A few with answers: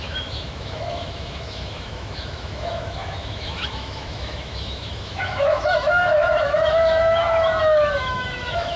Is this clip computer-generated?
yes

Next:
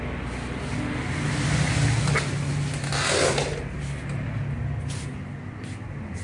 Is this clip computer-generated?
no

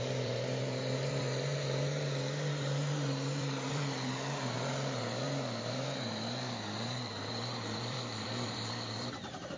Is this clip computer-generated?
yes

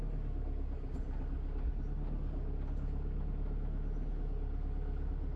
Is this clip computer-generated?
no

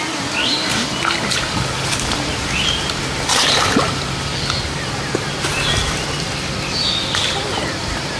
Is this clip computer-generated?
no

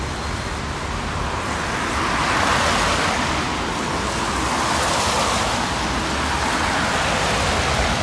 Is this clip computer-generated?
no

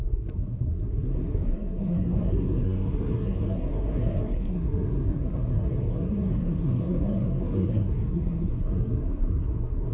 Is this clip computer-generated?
yes